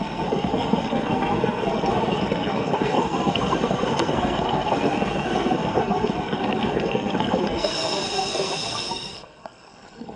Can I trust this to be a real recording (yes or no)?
no